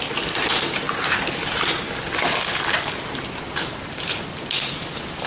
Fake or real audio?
real